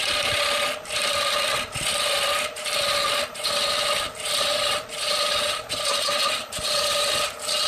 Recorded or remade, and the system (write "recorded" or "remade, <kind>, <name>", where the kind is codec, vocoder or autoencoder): recorded